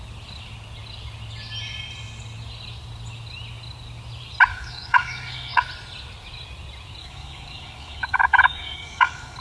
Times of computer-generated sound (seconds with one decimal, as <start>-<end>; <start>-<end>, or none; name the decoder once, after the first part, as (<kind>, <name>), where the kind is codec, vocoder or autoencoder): 4.5-5.6 (codec, DAC); 7.0-9.4